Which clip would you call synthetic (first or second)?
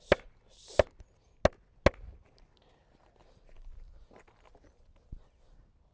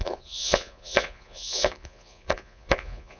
second